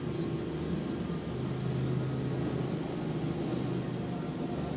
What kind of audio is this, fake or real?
real